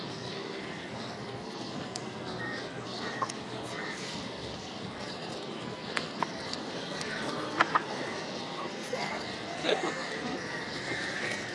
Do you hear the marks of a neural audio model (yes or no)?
yes